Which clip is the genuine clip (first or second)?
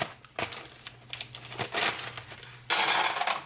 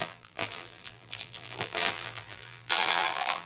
first